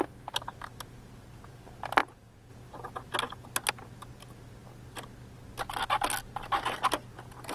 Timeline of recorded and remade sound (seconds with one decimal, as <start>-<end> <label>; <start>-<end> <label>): 0.0-2.0 recorded; 2.0-2.5 remade; 2.5-7.5 recorded